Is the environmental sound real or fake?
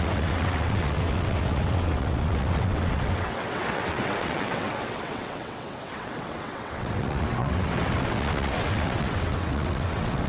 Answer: fake